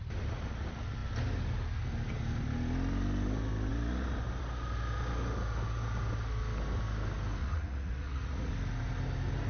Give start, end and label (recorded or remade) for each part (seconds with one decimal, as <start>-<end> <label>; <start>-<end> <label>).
0.0-7.4 recorded; 7.4-8.5 remade; 8.5-9.5 recorded